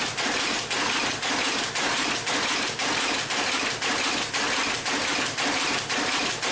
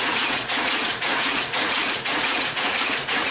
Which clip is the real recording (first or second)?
first